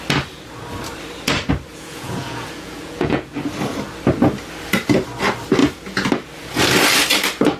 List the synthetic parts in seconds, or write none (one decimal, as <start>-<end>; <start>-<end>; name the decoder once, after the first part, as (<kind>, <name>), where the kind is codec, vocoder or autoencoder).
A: 1.7-3.3 (vocoder, Vocos)